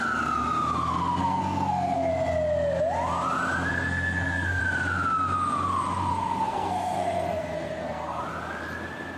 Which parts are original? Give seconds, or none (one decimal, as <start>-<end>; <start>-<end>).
0.0-1.2; 2.1-3.7; 4.6-6.1; 8.2-9.2